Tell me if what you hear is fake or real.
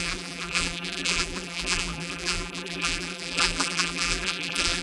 fake